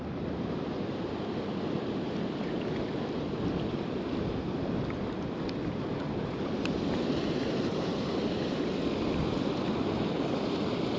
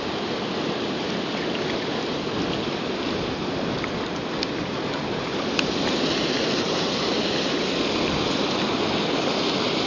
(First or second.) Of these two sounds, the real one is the second